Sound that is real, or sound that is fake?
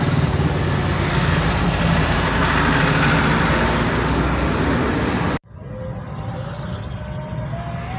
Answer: real